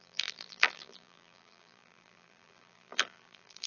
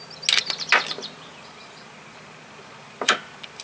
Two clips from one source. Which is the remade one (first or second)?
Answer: first